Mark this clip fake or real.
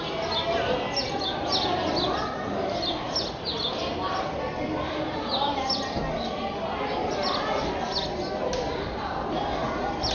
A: real